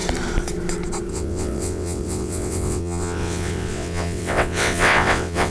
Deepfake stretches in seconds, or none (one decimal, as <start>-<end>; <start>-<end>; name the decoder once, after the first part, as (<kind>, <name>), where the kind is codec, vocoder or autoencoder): 1.1-5.5 (vocoder, WaveNeXt)